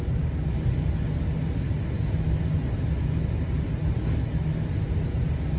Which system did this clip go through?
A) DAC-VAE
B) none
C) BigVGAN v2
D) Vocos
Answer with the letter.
B